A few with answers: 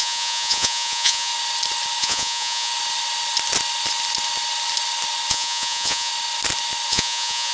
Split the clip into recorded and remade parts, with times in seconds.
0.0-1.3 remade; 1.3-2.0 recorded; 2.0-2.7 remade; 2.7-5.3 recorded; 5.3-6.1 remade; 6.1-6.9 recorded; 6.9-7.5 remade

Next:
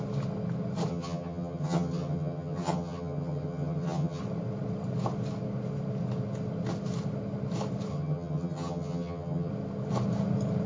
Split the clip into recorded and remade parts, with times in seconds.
0.0-0.9 recorded; 0.9-4.2 remade; 4.2-7.9 recorded; 7.9-9.5 remade; 9.5-10.7 recorded